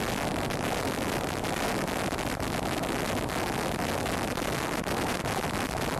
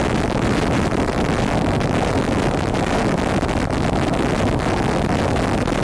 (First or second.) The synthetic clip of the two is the second